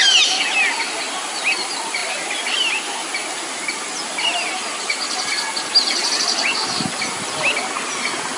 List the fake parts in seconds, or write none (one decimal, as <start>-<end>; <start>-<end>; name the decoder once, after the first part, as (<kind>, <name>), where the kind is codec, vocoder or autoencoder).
none